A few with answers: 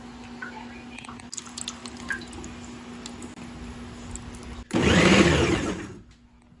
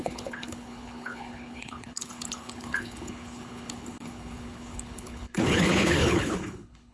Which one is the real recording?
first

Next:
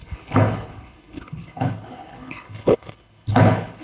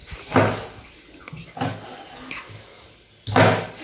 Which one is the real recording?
second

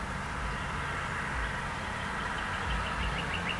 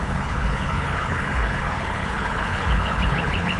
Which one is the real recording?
first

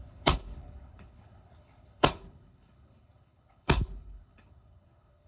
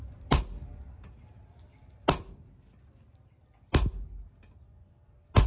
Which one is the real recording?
second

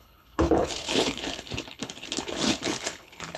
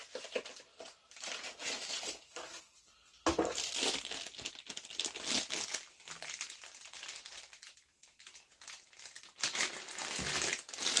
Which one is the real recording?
second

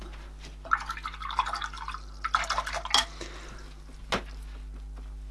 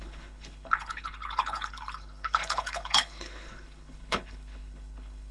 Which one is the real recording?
first